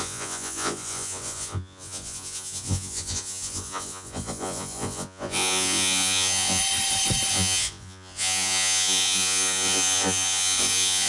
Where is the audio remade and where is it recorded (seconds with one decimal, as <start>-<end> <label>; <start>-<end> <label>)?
0.0-6.6 remade; 6.6-7.3 recorded; 7.3-11.1 remade